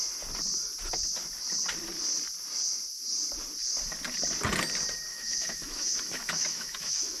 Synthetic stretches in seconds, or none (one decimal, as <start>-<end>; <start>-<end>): 5.1-7.2